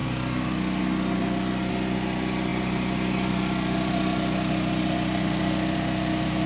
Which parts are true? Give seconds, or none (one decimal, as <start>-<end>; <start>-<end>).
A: 0.0-2.5